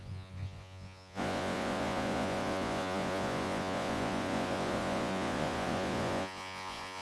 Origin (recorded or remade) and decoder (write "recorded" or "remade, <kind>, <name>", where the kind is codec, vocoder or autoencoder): remade, vocoder, Vocos